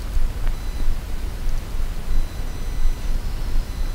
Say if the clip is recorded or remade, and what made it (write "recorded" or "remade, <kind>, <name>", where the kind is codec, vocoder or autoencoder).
recorded